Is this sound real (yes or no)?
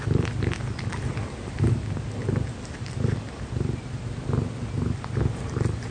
yes